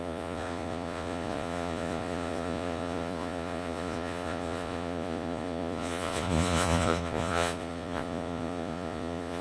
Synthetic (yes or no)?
yes